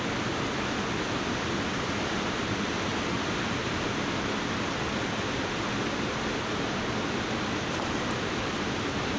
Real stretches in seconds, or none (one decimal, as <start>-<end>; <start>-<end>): 0.0-9.2